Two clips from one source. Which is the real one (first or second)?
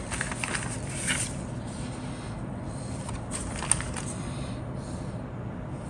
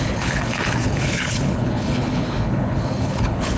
first